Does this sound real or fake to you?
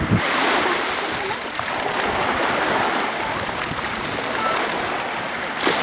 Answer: real